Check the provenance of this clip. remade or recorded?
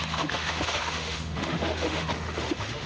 remade